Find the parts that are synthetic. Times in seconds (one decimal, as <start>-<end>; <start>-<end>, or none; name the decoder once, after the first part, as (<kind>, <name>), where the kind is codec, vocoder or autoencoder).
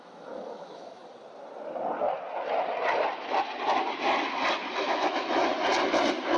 0.0-1.0 (autoencoder, DAC-VAE); 4.8-5.5